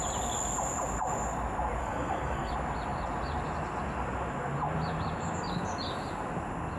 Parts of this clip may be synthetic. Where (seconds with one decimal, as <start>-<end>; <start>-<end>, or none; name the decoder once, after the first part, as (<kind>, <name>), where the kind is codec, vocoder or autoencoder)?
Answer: 1.8-2.5 (codec, SNAC)